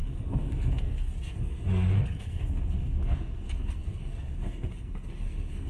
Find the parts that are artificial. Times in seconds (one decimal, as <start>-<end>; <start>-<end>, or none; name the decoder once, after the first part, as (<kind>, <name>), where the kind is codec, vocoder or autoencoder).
0.0-5.7 (codec, SNAC)